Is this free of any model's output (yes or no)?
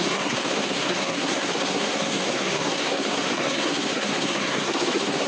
no